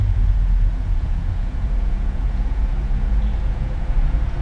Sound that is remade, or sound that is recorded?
remade